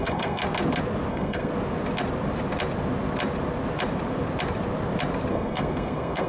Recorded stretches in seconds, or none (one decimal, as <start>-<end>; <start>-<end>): 0.4-1.1; 1.5-5.3